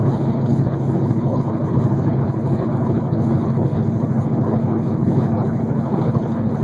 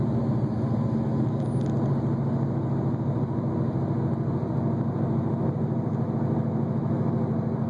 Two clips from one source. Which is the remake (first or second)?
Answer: first